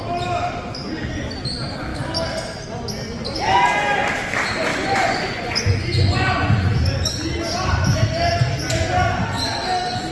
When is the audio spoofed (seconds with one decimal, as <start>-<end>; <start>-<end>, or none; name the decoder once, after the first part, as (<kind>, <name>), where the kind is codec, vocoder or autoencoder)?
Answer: 4.7-6.9 (vocoder, Vocos)

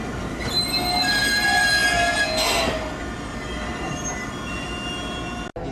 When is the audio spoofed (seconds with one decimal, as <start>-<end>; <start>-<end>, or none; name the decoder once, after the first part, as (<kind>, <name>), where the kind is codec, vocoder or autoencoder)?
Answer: none

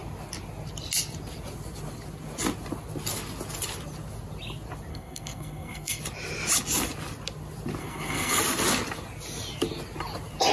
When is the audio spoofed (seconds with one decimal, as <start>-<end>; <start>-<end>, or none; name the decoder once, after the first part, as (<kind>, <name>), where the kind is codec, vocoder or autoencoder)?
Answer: 4.9-6.0 (codec, SNAC); 7.8-8.4